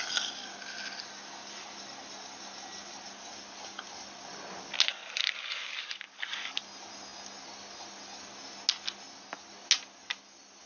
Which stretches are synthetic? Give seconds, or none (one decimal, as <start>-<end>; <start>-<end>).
4.9-6.6